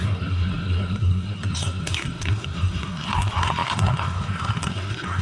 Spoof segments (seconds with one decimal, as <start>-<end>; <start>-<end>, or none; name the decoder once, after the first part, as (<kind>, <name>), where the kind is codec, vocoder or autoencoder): 0.0-5.2 (codec, SNAC)